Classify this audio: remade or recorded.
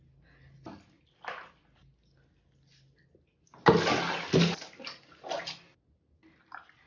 recorded